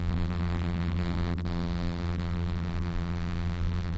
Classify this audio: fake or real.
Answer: fake